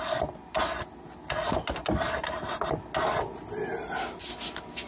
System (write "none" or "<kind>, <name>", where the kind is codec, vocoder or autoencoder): none